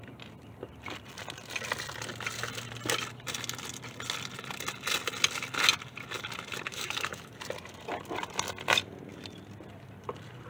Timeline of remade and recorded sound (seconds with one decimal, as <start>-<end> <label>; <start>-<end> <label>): 0.0-6.7 recorded; 6.7-7.3 remade; 7.3-10.5 recorded